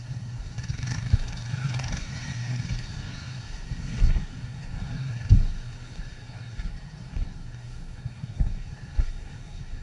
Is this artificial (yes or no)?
yes